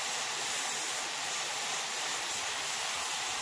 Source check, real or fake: fake